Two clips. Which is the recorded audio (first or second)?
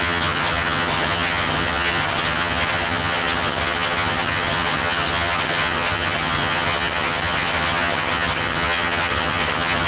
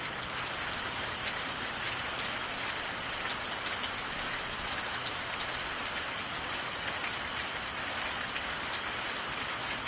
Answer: second